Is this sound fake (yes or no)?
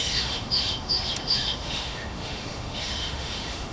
yes